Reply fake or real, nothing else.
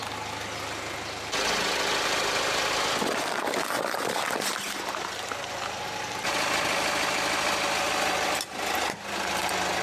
real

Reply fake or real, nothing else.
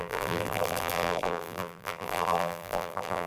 fake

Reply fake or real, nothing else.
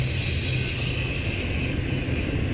real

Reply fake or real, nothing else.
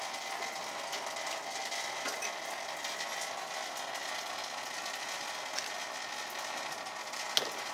real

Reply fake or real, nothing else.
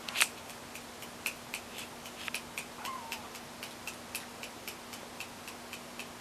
real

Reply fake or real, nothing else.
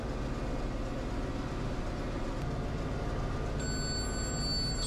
real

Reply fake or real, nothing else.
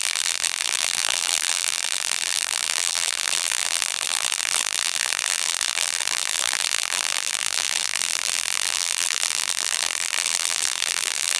fake